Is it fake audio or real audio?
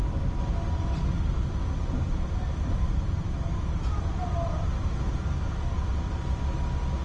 real